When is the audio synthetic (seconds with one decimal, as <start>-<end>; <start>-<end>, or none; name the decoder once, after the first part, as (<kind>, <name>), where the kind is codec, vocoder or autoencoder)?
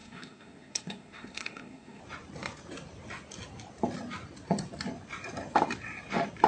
0.0-2.0 (codec, SNAC)